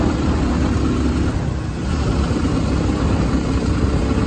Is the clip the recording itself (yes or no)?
yes